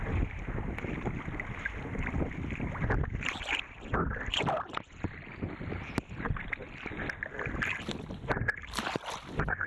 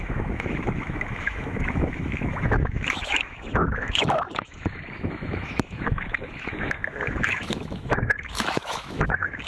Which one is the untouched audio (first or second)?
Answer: first